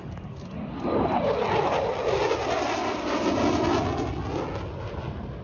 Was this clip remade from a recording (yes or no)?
no